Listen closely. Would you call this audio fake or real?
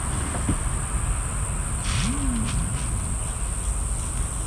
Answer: real